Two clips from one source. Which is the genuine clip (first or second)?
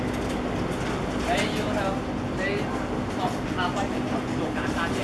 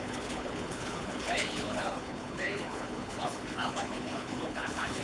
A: first